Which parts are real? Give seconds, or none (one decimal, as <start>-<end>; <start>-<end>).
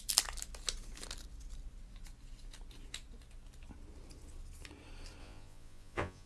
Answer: 0.0-5.2